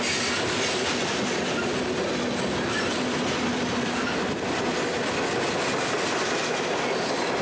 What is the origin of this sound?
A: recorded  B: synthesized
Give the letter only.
A